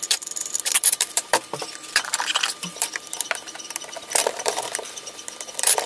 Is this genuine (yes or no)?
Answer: no